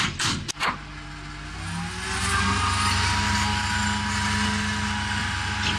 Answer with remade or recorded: recorded